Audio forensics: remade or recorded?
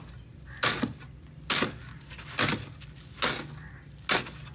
recorded